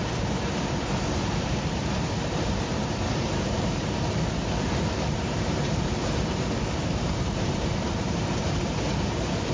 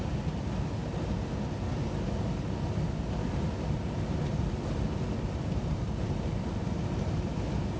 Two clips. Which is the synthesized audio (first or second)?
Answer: first